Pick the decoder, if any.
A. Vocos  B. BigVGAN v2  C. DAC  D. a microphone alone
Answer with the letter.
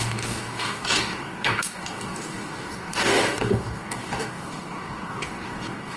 C